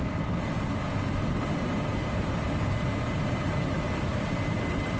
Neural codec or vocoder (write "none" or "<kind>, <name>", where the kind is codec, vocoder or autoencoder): none